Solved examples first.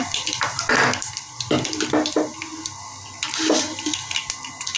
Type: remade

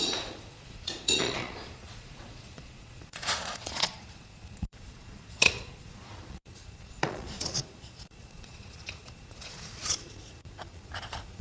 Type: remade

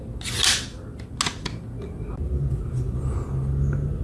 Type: recorded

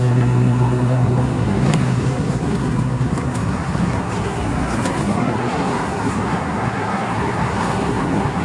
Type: remade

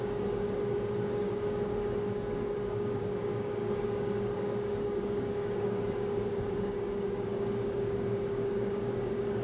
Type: remade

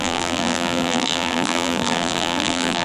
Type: remade